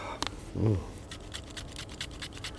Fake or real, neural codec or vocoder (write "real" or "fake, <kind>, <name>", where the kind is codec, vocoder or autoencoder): real